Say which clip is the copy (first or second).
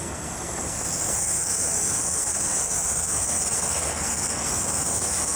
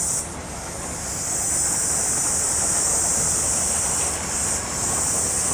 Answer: first